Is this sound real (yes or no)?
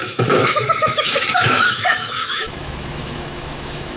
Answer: no